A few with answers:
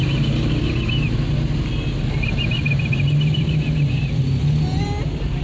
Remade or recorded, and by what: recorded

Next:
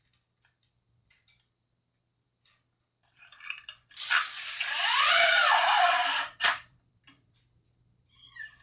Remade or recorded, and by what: remade, vocoder, BigVGAN v2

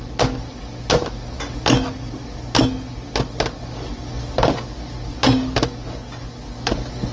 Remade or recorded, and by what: recorded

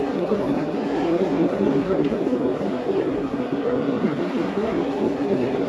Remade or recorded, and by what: remade, codec, SNAC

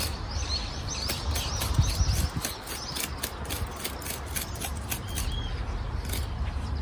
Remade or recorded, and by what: recorded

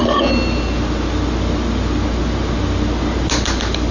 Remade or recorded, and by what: recorded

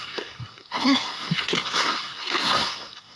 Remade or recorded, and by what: remade, codec, SNAC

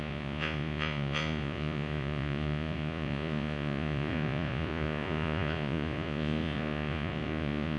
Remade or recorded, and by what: remade, vocoder, Vocos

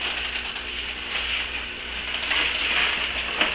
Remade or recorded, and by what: recorded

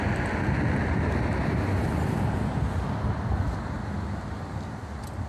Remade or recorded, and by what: recorded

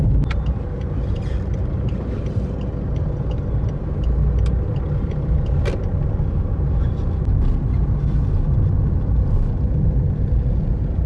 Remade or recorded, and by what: recorded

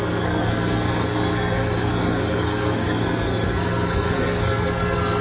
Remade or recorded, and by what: remade, codec, SNAC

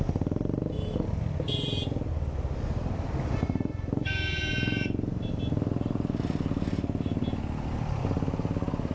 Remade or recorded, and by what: recorded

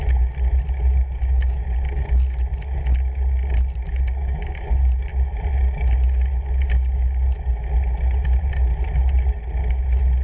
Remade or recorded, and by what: recorded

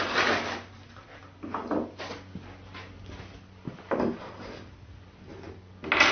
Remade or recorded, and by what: recorded